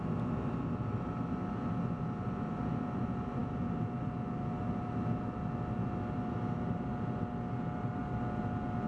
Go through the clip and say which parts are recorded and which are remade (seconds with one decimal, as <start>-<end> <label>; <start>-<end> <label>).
0.0-8.9 recorded